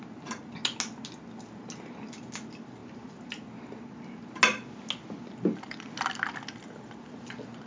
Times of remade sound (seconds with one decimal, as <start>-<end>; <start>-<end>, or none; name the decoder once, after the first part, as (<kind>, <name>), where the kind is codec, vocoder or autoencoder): none